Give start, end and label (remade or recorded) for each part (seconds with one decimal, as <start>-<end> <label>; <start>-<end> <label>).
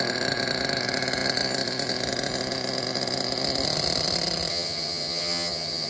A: 0.0-4.5 recorded; 4.5-5.9 remade